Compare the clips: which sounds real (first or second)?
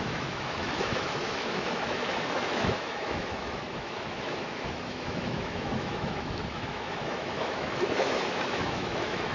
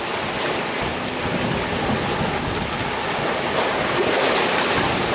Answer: second